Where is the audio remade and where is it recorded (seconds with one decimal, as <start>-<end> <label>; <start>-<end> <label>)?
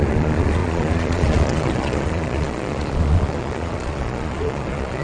0.0-5.0 remade